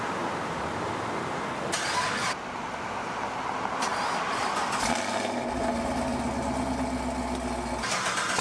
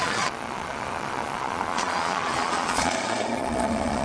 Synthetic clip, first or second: second